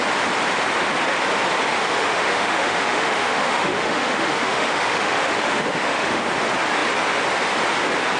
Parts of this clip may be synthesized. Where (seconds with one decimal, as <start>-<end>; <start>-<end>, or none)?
1.7-6.3